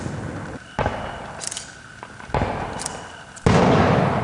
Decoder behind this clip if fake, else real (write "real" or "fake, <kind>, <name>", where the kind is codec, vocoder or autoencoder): real